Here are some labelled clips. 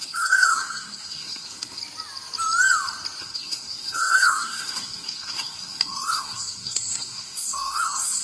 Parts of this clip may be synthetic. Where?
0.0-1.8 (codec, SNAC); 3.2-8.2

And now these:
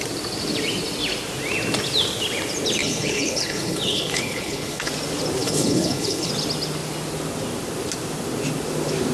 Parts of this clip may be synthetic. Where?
2.8-4.9 (codec, HILCodec); 5.4-6.3